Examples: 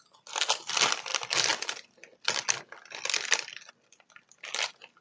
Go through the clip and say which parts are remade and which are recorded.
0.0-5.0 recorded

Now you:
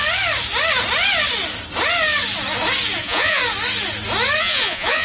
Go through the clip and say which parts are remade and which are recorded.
0.0-3.0 recorded; 3.0-3.4 remade; 3.4-4.4 recorded; 4.4-5.0 remade